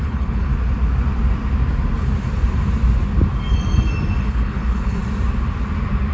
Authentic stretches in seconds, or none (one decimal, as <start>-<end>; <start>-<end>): 0.5-4.2; 5.0-6.1